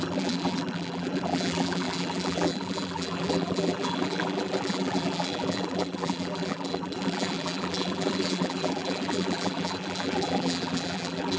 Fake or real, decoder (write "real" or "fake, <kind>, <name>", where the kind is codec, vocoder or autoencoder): fake, vocoder, BigVGAN v2